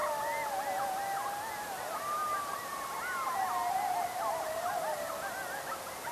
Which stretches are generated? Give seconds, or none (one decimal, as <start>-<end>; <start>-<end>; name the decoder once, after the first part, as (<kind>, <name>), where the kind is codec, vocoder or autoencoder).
none